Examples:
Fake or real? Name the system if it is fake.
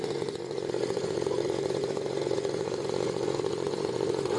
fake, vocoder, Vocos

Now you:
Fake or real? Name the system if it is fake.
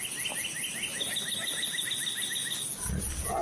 real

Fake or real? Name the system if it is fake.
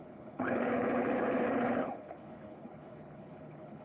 fake, codec, HILCodec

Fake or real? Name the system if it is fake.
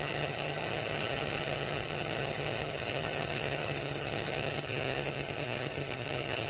fake, vocoder, HiFi-GAN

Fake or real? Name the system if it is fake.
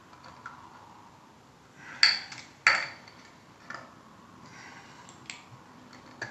real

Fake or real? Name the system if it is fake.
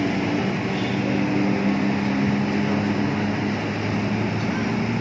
real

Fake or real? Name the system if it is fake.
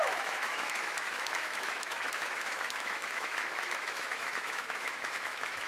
fake, autoencoder, DAC-VAE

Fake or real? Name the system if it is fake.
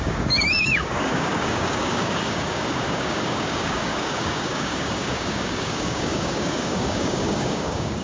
fake, codec, DAC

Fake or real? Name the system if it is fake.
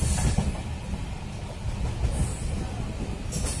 real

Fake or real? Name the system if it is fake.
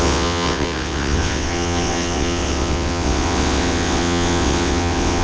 fake, vocoder, WaveNeXt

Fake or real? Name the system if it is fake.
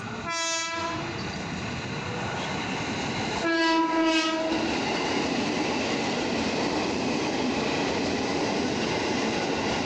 real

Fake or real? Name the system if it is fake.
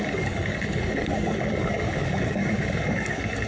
fake, codec, DAC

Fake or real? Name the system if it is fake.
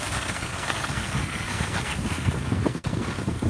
fake, codec, SNAC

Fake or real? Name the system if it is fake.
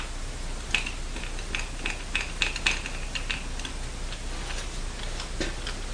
real